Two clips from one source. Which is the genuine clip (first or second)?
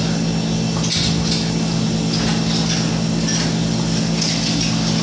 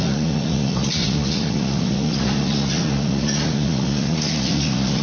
first